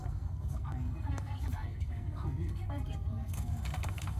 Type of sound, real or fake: fake